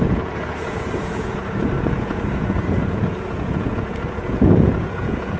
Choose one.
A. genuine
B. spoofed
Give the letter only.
B